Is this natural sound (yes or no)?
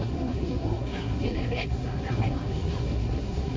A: no